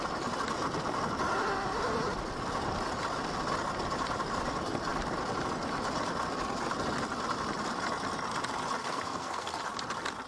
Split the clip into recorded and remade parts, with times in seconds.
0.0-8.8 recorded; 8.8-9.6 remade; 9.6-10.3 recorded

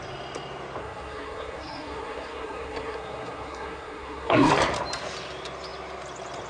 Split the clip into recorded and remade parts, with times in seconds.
0.0-0.8 recorded; 0.8-4.5 remade; 4.5-6.5 recorded

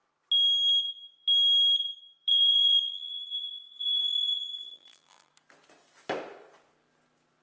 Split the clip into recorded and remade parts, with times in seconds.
0.0-2.3 recorded; 2.3-3.5 remade; 3.5-4.3 recorded; 4.3-5.3 remade; 5.3-7.4 recorded

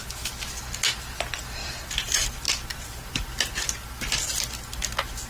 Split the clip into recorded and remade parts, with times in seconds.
0.0-1.6 recorded; 1.6-2.3 remade; 2.3-2.7 recorded; 2.7-3.3 remade; 3.3-5.3 recorded

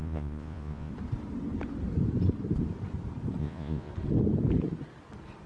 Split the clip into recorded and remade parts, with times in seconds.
0.0-0.9 remade; 0.9-3.4 recorded; 3.4-3.9 remade; 3.9-5.5 recorded